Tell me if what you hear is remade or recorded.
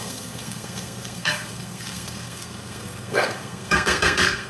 remade